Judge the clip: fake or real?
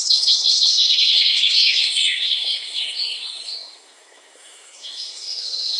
fake